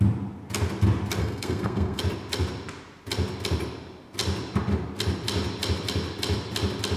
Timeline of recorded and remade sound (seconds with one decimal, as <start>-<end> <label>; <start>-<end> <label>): 0.0-1.2 recorded; 1.2-2.0 remade; 2.0-7.0 recorded